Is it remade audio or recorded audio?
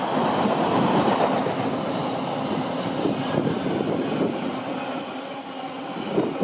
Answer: recorded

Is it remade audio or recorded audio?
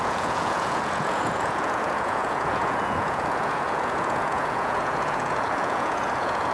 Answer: remade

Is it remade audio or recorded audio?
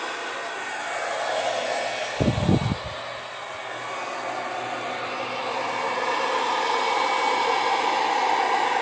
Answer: recorded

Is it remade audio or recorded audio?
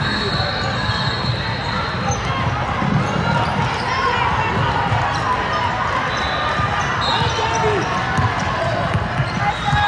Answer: recorded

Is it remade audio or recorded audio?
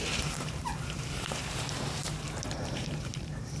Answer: remade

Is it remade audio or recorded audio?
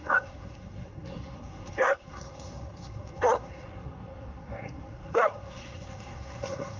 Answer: remade